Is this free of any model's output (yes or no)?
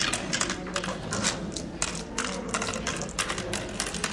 yes